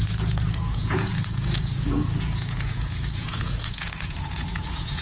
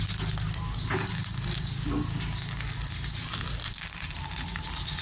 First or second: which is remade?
first